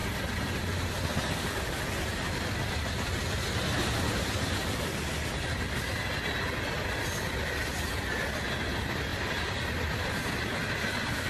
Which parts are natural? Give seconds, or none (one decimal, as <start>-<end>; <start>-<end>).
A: 0.0-11.3